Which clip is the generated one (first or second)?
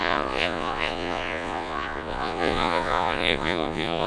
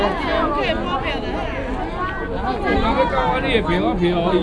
first